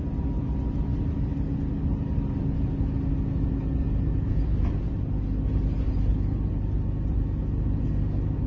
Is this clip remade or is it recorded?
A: recorded